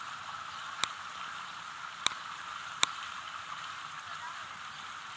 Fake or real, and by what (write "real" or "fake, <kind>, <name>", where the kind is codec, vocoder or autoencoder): real